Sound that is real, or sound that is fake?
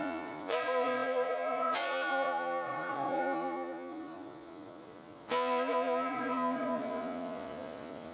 fake